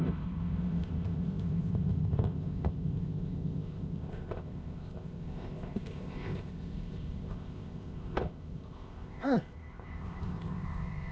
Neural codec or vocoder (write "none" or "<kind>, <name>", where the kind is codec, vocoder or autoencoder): codec, ZipCodec